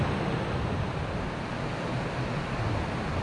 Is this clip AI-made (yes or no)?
no